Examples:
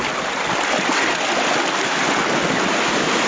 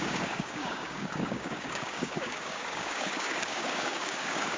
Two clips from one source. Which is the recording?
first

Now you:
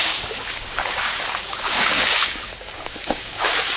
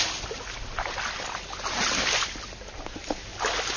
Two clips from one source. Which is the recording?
second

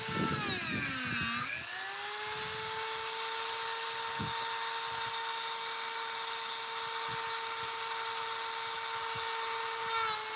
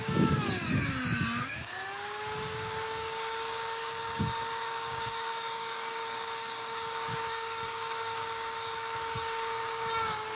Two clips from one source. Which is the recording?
first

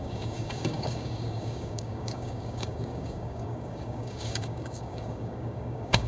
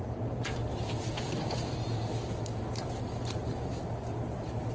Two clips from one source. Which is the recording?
second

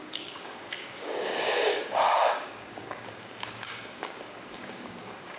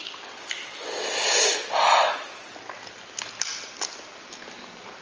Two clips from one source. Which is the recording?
second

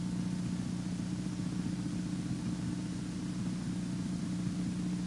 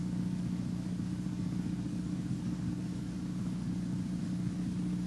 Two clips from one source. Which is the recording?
first